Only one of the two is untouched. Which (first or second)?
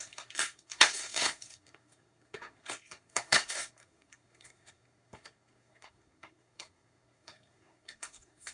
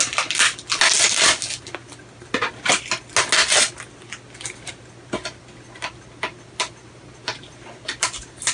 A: second